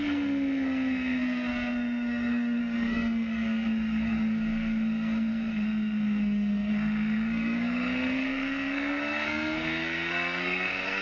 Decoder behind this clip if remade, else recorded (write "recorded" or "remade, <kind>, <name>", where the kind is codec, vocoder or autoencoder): remade, codec, SNAC